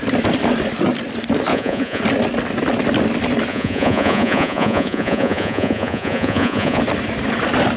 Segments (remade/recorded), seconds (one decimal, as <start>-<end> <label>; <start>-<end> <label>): 0.0-1.5 recorded; 1.5-2.0 remade; 2.0-3.5 recorded; 3.5-6.8 remade; 6.8-7.8 recorded